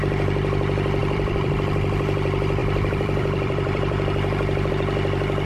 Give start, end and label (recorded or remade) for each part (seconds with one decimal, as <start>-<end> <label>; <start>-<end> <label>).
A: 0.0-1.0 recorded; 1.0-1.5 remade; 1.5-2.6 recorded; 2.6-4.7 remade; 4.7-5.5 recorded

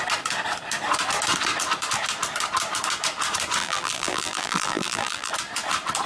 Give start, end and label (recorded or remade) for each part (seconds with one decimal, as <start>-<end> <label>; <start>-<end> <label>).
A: 0.0-3.6 recorded; 3.6-5.3 remade; 5.3-6.1 recorded

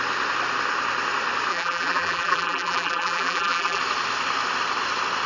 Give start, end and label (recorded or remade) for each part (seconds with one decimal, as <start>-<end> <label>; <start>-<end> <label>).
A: 0.0-1.5 recorded; 1.5-3.8 remade; 3.8-5.3 recorded